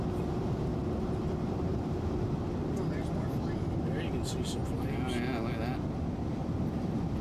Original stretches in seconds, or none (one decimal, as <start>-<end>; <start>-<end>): 0.0-0.7; 2.0-7.2